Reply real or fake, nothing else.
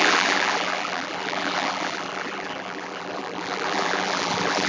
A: fake